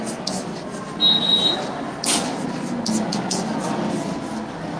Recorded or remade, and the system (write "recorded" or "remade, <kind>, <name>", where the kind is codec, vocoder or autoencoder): recorded